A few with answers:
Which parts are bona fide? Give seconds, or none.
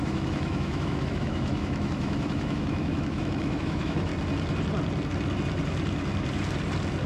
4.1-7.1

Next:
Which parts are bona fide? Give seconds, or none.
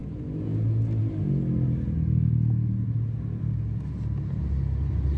0.0-5.2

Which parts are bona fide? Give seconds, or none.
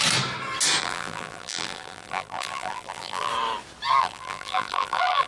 0.0-0.8; 3.3-4.0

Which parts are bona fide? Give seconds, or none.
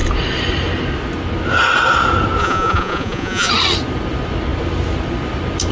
0.0-2.4; 3.5-5.7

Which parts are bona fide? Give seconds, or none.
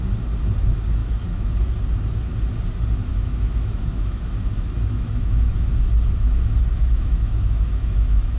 0.0-1.0; 1.5-3.1; 5.7-6.8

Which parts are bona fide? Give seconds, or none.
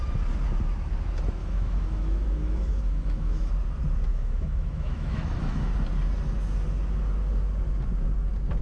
0.0-1.4; 3.5-4.1; 5.7-8.6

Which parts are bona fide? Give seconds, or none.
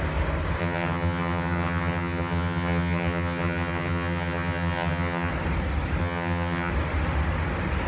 0.0-0.6; 5.3-6.0; 6.7-7.9